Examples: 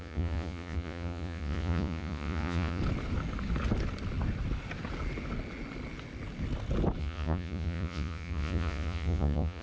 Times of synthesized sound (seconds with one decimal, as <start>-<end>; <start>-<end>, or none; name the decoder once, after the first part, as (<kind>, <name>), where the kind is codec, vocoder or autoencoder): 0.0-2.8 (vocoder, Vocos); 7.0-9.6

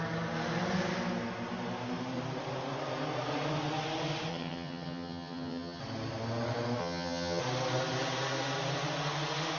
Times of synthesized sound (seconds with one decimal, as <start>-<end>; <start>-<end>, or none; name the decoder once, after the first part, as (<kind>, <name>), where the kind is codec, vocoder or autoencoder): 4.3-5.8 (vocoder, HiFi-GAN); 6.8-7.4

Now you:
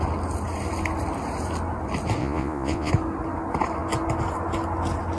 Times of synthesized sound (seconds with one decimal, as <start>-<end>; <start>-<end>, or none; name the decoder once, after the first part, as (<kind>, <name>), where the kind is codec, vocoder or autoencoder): 2.2-2.9 (vocoder, Vocos)